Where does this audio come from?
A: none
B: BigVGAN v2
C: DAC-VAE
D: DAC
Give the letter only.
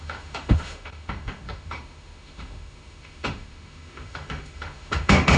C